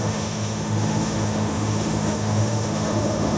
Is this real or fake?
fake